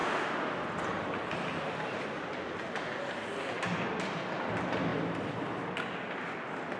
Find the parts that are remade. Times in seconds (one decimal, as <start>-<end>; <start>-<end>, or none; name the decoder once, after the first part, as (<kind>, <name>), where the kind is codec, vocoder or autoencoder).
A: none